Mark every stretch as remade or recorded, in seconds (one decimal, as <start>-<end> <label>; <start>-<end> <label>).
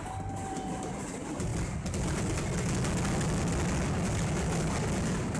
0.0-5.4 recorded